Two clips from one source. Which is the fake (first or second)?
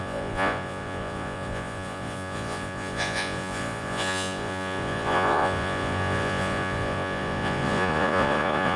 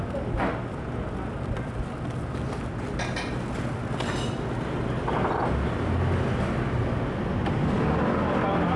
first